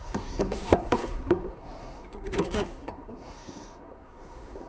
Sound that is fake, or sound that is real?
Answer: fake